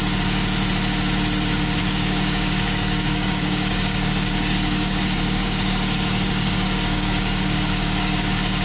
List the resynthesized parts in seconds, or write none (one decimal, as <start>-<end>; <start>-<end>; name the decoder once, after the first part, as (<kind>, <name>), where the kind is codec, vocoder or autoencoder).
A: 1.8-8.6 (codec, DAC)